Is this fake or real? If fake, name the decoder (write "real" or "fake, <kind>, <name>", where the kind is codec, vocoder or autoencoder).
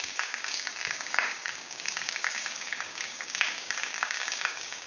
fake, codec, DAC